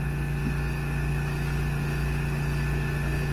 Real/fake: real